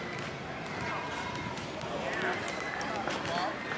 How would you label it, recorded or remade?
recorded